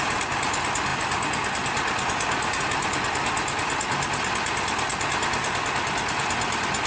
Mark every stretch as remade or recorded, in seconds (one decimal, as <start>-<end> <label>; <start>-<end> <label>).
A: 0.0-6.9 recorded